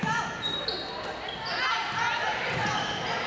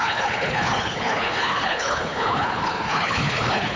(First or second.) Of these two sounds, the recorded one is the first